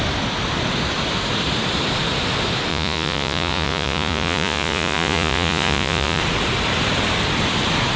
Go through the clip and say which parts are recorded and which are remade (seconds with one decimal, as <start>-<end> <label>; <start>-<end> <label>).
0.0-2.7 recorded; 2.7-6.2 remade; 6.2-8.0 recorded